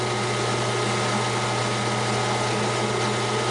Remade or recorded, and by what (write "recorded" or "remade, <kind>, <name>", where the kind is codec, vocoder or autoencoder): recorded